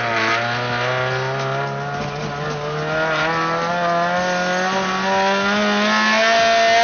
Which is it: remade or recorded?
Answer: recorded